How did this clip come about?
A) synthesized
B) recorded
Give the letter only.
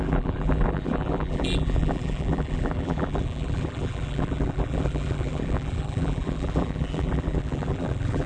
A